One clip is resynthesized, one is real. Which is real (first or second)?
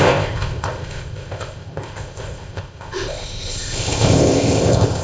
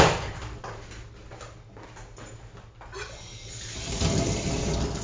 second